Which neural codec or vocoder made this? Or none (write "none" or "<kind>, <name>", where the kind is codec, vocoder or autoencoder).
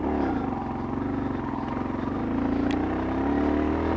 none